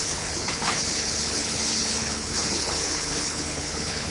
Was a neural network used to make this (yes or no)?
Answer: yes